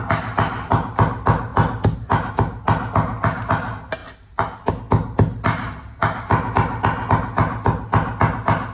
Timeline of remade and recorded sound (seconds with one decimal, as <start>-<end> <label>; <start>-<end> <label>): 0.0-8.7 recorded